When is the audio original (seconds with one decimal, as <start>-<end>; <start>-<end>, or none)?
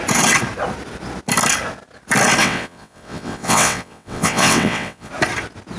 0.0-2.4; 5.1-5.8